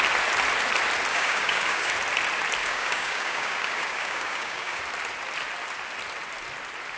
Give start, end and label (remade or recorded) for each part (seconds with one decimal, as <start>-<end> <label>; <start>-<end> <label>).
0.0-1.1 recorded; 1.1-1.9 remade; 1.9-2.6 recorded; 2.6-4.8 remade; 4.8-7.0 recorded